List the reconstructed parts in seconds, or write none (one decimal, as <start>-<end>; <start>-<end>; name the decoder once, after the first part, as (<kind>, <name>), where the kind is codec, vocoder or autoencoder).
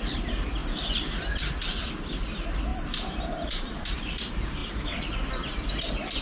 2.7-3.8 (vocoder, BigVGAN v2); 4.6-5.2